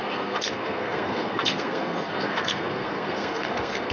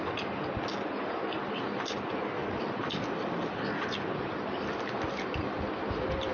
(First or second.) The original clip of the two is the second